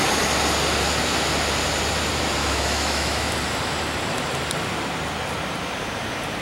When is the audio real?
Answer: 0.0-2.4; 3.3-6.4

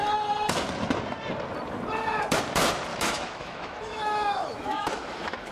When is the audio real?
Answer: 0.0-2.9

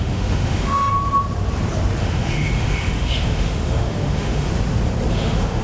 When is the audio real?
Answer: 0.9-2.0; 4.5-5.1